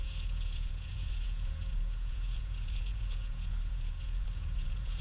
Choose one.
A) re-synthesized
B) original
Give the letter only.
A